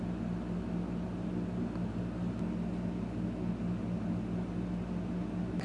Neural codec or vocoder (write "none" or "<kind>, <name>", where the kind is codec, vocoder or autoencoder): none